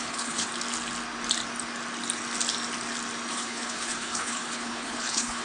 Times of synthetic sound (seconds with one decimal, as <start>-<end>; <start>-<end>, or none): 0.0-0.5; 3.3-5.4